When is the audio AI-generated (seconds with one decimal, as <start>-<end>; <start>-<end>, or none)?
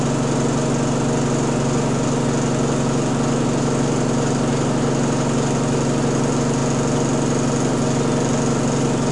none